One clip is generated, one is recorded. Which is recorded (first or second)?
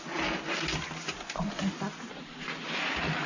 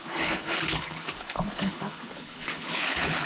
first